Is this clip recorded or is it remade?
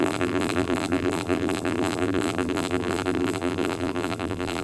remade